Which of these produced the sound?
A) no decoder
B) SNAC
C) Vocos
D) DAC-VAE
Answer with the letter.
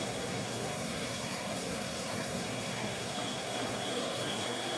B